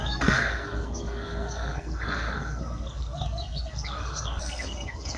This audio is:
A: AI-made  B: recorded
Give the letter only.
A